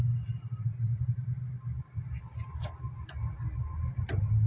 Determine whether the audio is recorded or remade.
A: recorded